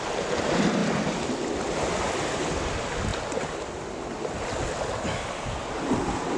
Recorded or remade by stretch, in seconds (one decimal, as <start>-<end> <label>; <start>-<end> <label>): 0.0-6.4 recorded